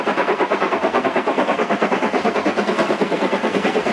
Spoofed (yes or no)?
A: yes